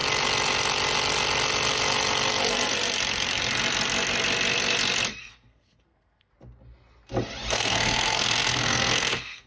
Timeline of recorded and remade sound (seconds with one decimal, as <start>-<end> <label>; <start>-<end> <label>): 0.0-5.2 recorded; 5.2-6.3 remade; 6.3-7.5 recorded; 7.5-9.5 remade